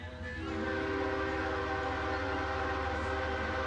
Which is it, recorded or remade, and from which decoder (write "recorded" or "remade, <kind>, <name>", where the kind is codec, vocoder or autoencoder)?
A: recorded